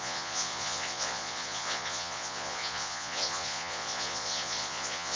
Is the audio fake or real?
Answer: fake